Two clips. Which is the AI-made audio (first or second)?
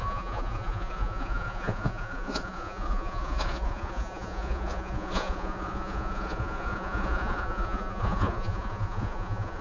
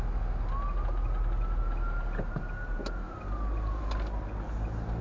first